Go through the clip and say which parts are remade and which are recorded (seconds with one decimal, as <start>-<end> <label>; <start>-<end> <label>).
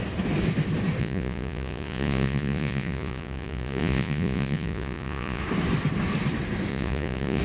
0.0-1.0 recorded; 1.0-5.4 remade; 5.4-6.7 recorded; 6.7-7.4 remade